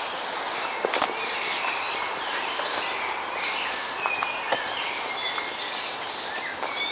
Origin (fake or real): real